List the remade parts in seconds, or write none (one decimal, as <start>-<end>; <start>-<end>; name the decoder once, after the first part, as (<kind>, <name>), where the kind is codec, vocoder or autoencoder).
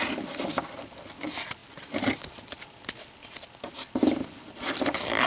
none